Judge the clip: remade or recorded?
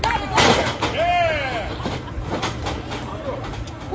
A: recorded